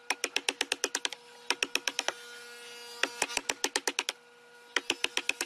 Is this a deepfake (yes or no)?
no